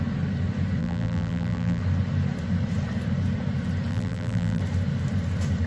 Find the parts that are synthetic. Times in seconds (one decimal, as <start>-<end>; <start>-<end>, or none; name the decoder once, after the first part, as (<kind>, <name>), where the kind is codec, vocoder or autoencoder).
0.8-1.8 (vocoder, BigVGAN v2); 3.9-4.6